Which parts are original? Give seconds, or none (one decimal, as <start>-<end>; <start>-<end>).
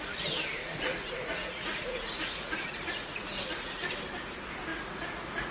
0.0-0.6; 3.9-4.7